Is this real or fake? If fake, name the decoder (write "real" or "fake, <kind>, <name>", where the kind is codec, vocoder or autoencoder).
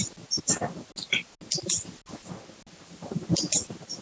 real